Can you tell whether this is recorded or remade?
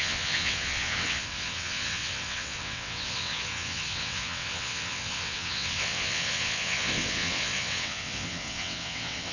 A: remade